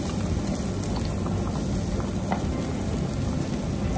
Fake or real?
real